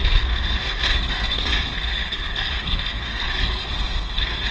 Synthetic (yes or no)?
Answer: yes